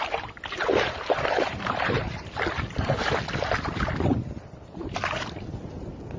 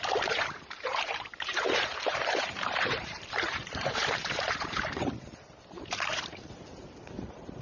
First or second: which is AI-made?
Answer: second